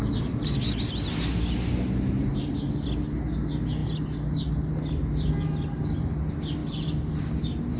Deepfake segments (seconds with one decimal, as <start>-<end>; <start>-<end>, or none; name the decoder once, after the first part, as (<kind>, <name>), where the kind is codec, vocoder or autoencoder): none